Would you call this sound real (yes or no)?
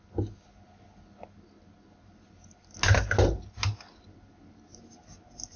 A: yes